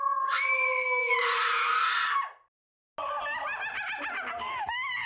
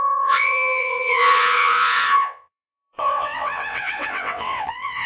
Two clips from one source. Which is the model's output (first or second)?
second